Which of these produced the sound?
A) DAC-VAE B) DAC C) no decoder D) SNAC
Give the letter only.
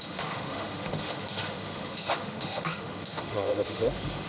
A